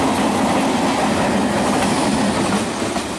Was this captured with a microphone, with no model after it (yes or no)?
yes